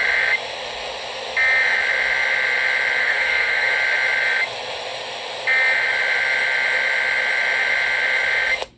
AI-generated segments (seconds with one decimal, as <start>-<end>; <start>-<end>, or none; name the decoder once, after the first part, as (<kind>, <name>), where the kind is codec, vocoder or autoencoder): 3.0-3.7 (codec, SNAC)